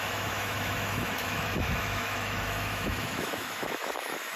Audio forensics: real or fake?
fake